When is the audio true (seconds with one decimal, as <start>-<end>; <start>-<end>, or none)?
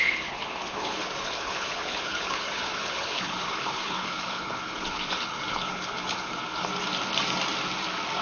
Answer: 6.7-8.2